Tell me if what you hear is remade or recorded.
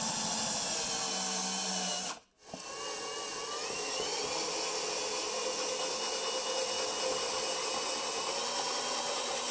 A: recorded